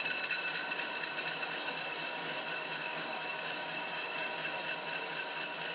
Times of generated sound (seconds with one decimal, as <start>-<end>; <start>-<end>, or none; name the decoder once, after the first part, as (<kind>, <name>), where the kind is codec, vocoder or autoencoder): 1.6-2.4 (codec, DAC); 2.8-4.3